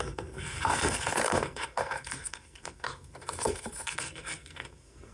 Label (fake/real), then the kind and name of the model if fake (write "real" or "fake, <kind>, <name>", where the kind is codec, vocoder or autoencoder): fake, codec, SNAC